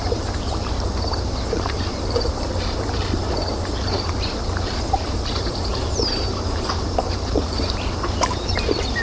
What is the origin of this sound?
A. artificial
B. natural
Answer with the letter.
A